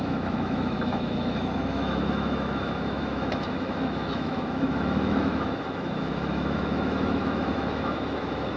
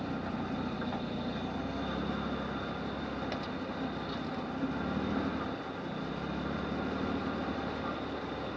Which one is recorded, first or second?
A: second